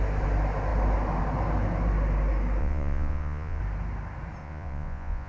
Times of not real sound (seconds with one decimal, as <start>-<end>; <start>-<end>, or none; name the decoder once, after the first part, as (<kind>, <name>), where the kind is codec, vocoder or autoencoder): 2.6-3.6 (vocoder, Vocos); 4.4-5.3